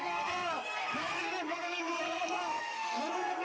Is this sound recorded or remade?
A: remade